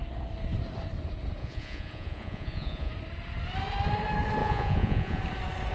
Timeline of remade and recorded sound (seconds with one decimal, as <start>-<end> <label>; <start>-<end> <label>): 0.0-1.4 recorded; 1.4-2.9 remade; 2.9-4.4 recorded; 4.4-5.2 remade; 5.2-5.7 recorded